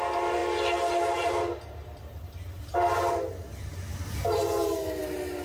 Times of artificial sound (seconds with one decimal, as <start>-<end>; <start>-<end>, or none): none